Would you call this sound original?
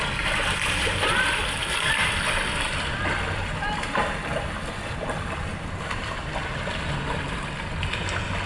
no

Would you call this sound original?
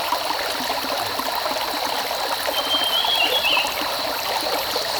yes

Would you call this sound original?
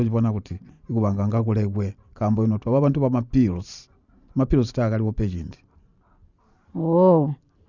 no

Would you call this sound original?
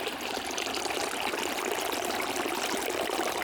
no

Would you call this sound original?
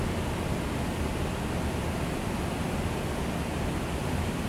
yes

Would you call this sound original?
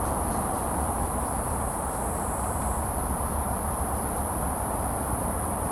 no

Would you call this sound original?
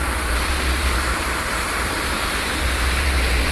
no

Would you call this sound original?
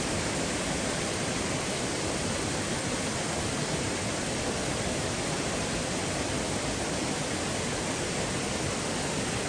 no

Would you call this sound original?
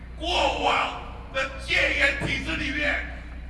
yes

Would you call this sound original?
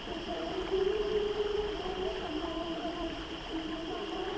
no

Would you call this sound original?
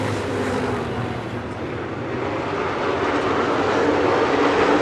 yes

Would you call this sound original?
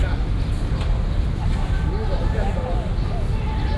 yes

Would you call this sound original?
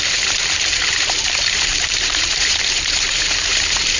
no